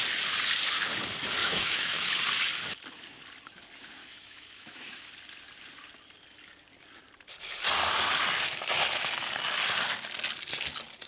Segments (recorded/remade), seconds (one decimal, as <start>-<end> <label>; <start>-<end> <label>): 0.0-1.4 recorded; 1.4-2.1 remade; 2.1-4.0 recorded; 4.0-5.1 remade; 5.1-11.1 recorded